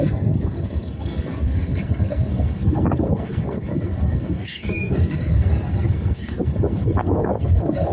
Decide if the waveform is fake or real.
fake